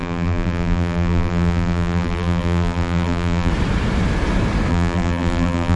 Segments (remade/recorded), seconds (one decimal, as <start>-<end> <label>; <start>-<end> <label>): 0.0-3.5 remade; 3.5-4.7 recorded; 4.7-5.8 remade